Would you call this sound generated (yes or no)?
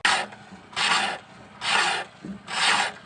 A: no